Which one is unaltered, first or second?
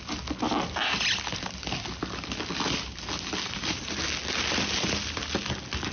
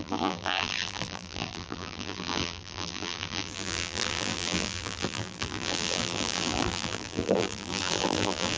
first